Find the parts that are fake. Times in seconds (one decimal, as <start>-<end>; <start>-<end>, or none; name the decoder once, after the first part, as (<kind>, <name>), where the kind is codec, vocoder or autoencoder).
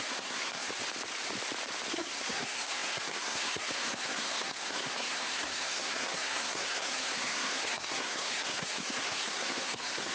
0.0-0.7 (codec, SNAC); 1.9-10.1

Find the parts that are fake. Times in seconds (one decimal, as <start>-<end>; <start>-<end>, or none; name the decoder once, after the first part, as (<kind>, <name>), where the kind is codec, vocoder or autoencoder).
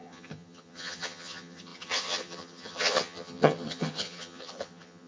0.0-5.1 (vocoder, HiFi-GAN)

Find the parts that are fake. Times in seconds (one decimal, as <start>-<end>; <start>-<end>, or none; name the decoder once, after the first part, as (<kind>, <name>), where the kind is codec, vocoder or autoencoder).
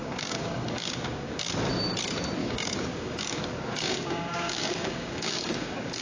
0.0-1.5 (codec, DAC); 2.4-6.0